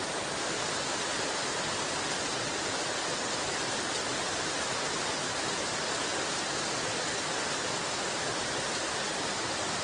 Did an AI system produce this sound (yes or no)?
no